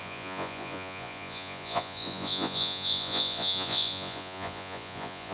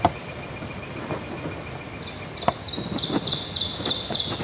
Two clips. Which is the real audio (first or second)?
second